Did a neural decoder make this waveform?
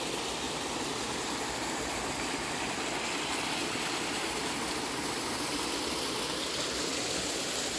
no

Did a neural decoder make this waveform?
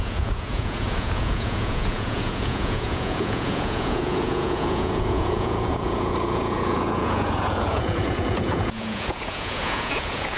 yes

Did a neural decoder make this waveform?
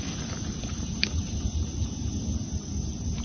no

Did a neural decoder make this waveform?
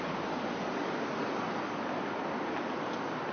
no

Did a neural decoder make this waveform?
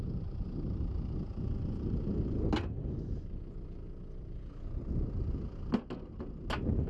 no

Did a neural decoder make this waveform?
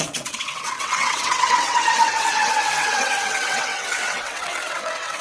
yes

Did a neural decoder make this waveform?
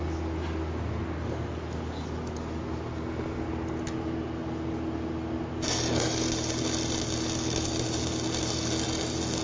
no